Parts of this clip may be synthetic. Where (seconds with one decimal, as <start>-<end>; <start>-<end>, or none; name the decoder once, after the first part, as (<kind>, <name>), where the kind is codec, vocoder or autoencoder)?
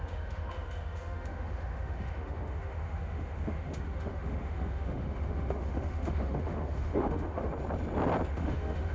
0.0-7.5 (autoencoder, DAC-VAE); 8.3-8.9